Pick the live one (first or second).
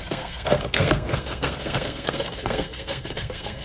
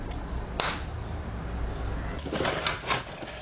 second